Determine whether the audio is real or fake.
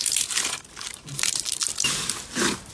real